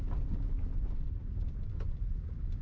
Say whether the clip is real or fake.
real